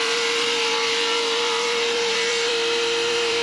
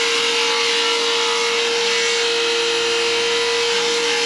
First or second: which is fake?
first